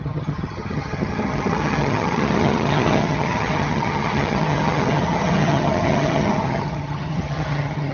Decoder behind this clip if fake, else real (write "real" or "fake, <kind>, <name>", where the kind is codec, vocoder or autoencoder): fake, vocoder, HiFi-GAN